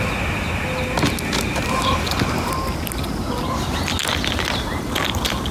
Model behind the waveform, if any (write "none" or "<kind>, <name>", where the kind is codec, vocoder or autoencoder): none